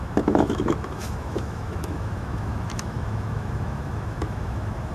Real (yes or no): no